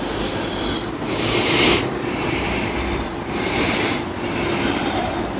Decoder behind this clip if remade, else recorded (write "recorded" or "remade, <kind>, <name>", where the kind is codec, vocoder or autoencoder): remade, vocoder, BigVGAN v2